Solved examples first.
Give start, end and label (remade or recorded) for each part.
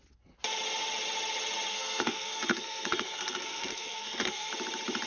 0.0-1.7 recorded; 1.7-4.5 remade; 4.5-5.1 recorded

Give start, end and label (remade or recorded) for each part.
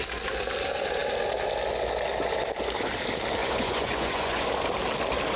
0.0-3.4 recorded; 3.4-4.5 remade; 4.5-5.4 recorded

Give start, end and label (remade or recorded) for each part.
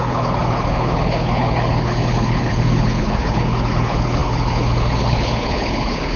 0.0-6.2 remade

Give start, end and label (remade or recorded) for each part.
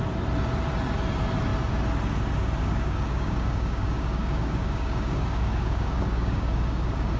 0.0-2.6 recorded; 2.6-7.2 remade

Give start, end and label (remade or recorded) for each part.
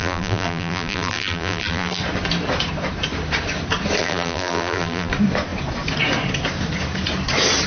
0.0-2.0 remade; 2.0-4.0 recorded; 4.0-5.1 remade; 5.1-7.7 recorded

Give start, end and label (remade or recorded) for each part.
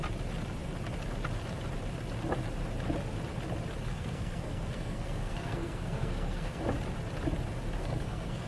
0.0-3.9 recorded; 3.9-6.6 remade; 6.6-7.8 recorded; 7.8-8.5 remade